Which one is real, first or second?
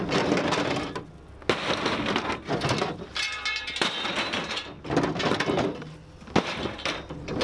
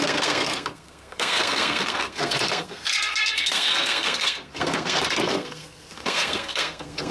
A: first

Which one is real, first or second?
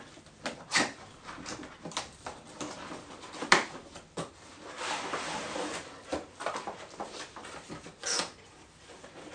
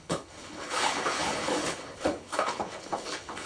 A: first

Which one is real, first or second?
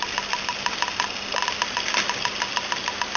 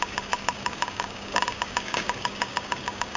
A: first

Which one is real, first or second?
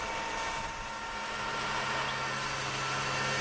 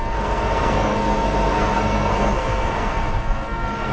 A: first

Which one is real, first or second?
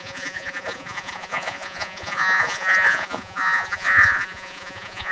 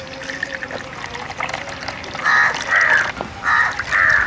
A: second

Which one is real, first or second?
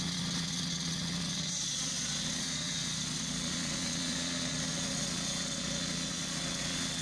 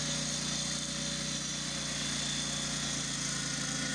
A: second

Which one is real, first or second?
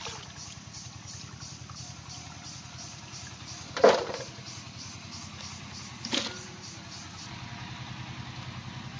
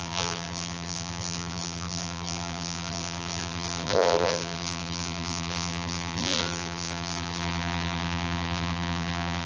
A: first